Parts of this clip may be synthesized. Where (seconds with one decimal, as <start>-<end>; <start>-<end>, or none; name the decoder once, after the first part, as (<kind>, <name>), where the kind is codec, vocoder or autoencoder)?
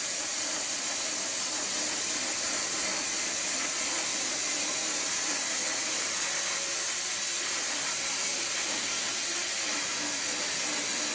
none